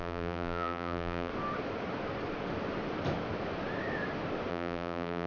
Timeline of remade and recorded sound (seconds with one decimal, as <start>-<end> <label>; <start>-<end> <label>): 0.0-1.3 remade; 1.3-4.5 recorded; 4.5-5.3 remade